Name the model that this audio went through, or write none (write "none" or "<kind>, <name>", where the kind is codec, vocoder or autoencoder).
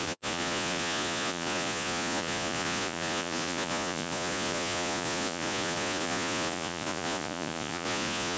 vocoder, Vocos